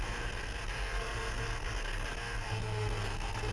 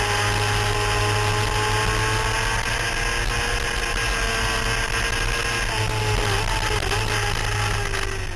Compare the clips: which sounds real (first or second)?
second